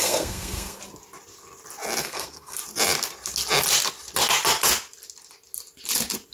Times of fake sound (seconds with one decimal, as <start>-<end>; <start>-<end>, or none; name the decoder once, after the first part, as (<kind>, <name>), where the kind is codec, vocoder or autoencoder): 0.0-0.8 (codec, SNAC); 2.0-2.6